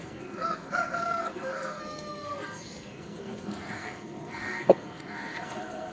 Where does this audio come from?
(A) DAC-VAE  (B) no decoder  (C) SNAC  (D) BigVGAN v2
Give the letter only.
C